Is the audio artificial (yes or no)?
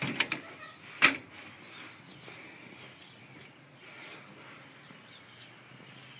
no